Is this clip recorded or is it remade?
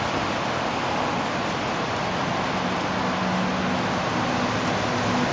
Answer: recorded